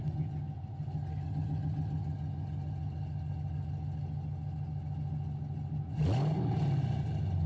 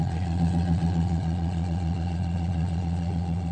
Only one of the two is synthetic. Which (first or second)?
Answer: second